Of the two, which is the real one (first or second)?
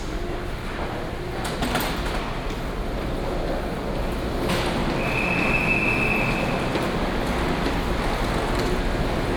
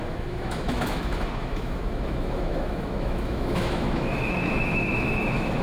first